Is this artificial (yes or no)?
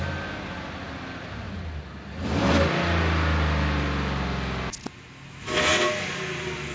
no